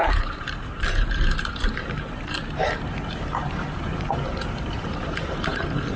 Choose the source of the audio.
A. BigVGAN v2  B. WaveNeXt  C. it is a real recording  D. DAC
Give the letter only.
A